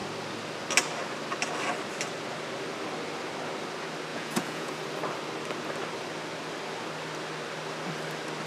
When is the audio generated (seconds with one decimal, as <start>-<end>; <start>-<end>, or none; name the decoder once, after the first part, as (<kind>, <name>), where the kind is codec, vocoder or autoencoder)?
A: 4.1-4.8 (vocoder, Vocos)